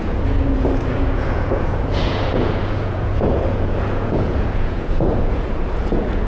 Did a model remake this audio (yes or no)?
yes